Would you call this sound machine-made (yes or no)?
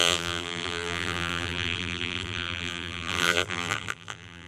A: yes